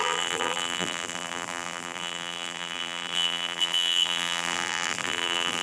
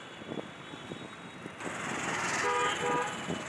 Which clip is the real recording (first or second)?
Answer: second